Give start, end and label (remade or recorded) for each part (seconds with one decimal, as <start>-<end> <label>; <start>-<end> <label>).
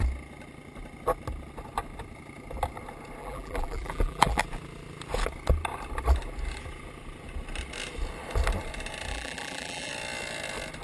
0.0-3.2 recorded; 3.2-4.4 remade; 4.4-9.1 recorded; 9.1-9.9 remade; 9.9-10.8 recorded